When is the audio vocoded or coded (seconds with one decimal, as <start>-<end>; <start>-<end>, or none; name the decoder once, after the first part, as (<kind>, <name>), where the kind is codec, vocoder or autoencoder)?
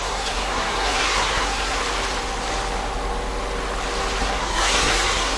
0.0-1.8 (codec, SNAC); 4.2-5.4